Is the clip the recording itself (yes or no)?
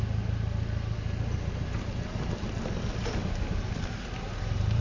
yes